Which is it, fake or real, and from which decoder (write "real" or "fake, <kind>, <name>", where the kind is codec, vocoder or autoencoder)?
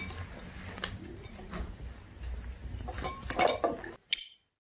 real